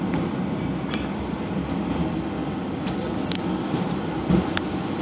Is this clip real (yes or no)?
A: yes